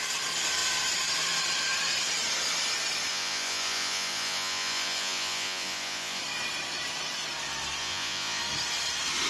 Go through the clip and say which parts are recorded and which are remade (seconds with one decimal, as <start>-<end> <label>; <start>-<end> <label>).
0.0-3.1 recorded; 3.1-6.2 remade; 6.2-7.8 recorded; 7.8-8.4 remade; 8.4-9.3 recorded